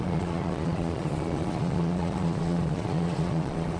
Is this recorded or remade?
remade